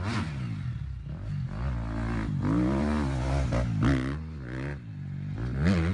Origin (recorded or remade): recorded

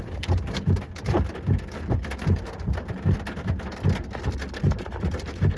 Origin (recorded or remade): recorded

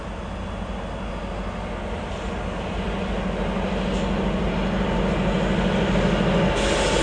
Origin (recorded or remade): recorded